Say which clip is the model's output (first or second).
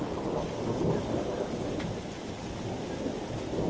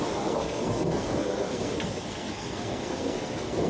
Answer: second